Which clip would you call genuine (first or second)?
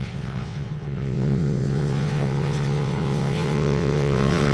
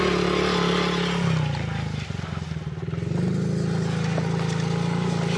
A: second